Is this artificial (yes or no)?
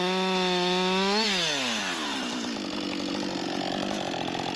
no